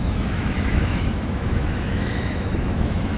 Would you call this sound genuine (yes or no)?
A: no